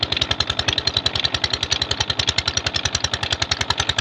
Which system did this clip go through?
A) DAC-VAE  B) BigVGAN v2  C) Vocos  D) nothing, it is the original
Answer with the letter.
D